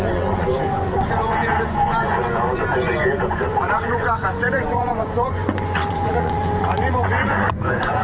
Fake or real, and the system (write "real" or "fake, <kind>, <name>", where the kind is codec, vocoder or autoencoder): fake, vocoder, Vocos